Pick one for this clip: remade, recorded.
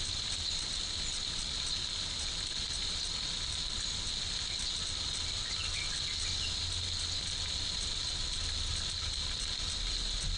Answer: recorded